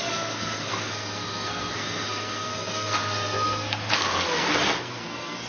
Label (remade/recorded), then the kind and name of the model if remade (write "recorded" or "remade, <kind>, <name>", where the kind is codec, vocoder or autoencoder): remade, codec, SNAC